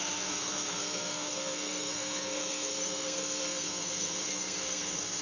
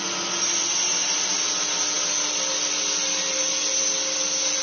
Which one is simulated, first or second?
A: first